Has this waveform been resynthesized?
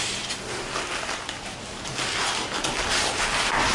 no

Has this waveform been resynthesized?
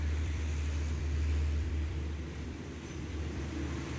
yes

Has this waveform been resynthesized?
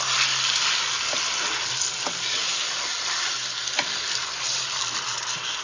no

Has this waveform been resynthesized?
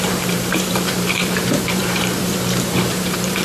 yes